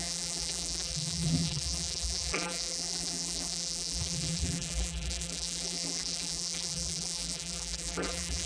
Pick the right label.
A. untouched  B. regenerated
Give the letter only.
B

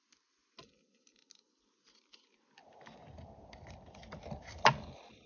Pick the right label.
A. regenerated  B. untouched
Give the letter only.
B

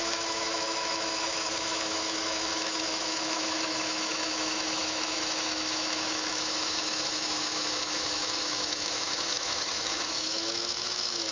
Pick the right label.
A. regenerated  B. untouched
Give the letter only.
A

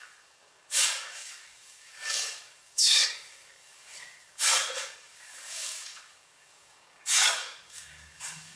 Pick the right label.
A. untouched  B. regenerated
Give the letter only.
B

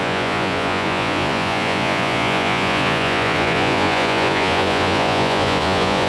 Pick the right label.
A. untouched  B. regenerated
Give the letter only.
B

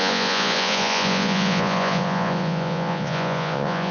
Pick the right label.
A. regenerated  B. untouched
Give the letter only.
A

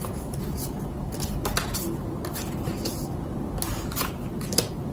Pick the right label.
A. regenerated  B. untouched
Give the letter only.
B